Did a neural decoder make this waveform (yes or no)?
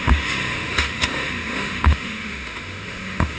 yes